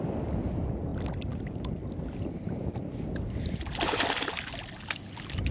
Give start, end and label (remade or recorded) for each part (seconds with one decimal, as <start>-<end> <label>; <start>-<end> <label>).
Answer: 0.0-5.5 recorded